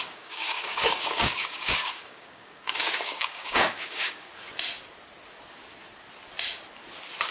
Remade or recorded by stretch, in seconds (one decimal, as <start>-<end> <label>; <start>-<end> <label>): 0.0-4.3 remade; 4.3-7.3 recorded